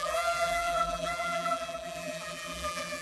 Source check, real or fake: fake